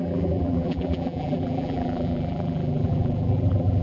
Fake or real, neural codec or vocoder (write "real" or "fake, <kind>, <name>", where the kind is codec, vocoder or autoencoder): fake, vocoder, BigVGAN v2